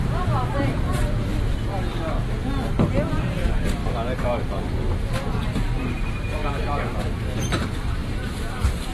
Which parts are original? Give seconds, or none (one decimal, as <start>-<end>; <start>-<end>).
1.3-3.2; 3.8-4.6; 6.4-7.1